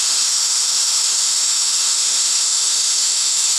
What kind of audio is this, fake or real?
fake